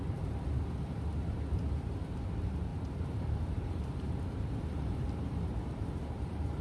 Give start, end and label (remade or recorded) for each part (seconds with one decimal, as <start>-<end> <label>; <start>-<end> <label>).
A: 0.0-2.7 recorded; 2.7-6.6 remade